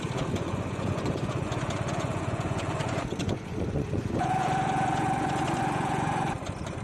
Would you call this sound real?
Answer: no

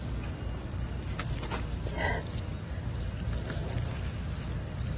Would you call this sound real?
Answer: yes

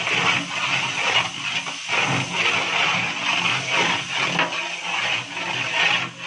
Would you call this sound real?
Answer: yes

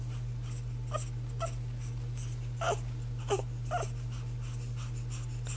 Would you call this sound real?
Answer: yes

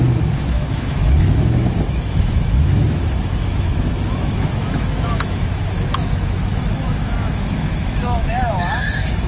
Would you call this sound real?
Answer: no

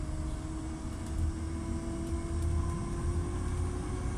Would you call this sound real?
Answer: yes